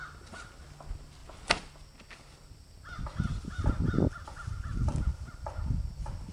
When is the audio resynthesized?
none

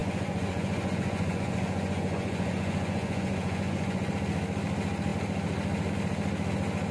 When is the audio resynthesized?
0.0-4.1 (vocoder, Vocos)

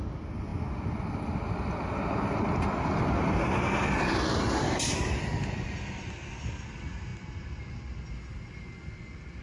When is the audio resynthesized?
none

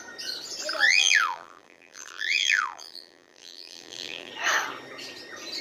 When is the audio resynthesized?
0.9-4.3 (vocoder, BigVGAN v2)

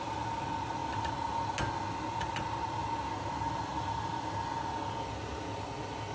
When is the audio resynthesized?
none

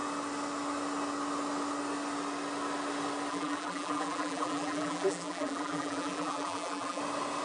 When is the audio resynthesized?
3.3-7.0 (vocoder, BigVGAN v2)